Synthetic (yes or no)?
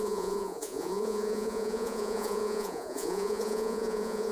yes